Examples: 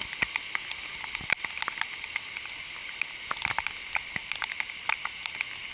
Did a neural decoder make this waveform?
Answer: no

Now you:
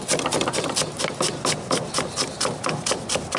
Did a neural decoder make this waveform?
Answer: no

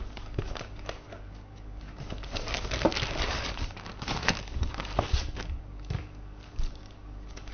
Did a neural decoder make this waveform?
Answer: yes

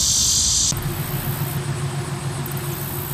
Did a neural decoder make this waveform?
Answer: no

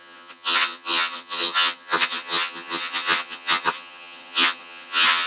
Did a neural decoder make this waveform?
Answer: yes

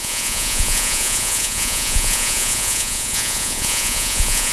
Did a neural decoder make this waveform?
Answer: yes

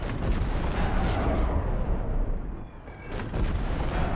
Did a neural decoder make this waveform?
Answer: no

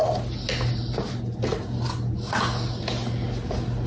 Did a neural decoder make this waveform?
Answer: no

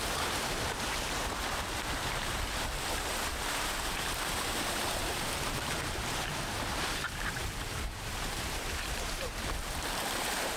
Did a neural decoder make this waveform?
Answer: yes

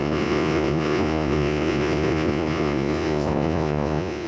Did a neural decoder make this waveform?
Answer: yes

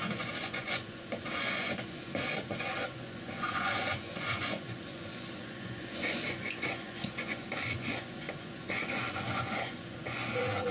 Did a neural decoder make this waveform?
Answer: yes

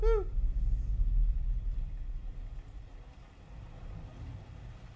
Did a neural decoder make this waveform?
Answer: no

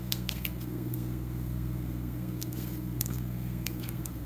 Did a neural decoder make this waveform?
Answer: yes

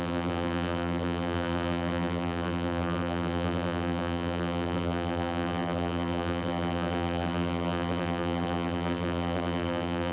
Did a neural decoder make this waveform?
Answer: yes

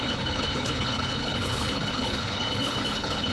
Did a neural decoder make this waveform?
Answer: yes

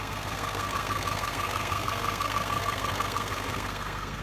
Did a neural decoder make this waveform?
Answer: yes